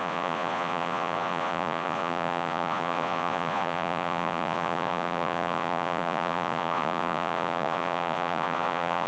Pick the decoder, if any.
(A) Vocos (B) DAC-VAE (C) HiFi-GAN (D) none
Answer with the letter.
A